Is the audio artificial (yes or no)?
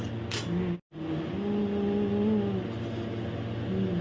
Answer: no